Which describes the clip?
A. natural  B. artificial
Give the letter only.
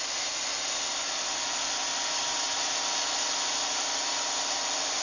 A